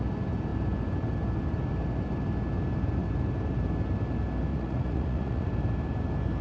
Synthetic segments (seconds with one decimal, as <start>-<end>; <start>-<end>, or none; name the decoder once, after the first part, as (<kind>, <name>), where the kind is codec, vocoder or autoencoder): 4.5-5.5 (vocoder, Vocos)